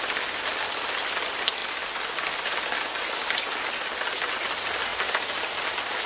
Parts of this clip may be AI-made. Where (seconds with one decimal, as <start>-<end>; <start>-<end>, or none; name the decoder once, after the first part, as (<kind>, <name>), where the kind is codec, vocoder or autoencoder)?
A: none

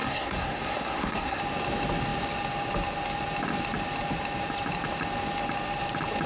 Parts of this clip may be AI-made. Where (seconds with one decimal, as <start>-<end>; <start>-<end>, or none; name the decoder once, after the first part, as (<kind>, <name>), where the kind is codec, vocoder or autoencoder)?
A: 0.0-1.4 (codec, SNAC)

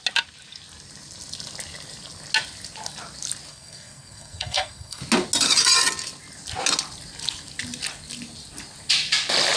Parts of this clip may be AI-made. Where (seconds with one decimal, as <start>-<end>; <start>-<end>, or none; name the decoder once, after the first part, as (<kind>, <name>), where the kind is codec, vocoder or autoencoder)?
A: 3.5-5.0 (codec, SNAC)

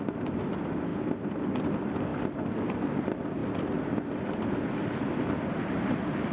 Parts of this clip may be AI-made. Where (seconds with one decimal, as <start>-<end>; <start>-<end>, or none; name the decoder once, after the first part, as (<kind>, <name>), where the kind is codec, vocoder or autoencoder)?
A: 0.0-0.9 (vocoder, BigVGAN v2); 1.6-2.1; 3.0-6.3

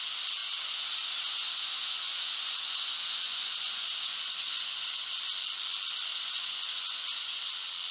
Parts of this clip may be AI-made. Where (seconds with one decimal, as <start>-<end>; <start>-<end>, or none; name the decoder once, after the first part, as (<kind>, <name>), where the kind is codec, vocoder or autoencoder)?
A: 0.4-5.1 (vocoder, Vocos); 6.1-7.4

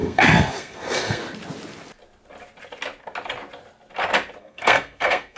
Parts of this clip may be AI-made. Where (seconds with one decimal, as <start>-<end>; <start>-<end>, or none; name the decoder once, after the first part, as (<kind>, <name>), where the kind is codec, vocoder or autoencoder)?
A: 0.0-1.2 (codec, SNAC); 4.4-5.4

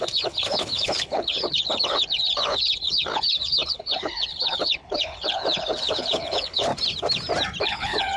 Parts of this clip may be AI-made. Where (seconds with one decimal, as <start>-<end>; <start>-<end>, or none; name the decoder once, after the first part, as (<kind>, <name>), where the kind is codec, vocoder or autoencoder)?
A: 0.0-6.7 (codec, HILCodec); 7.6-8.2

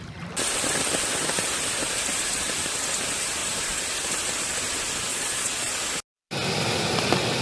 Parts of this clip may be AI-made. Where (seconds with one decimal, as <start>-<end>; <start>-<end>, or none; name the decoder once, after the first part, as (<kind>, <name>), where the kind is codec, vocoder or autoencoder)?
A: 5.1-5.7 (vocoder, Vocos)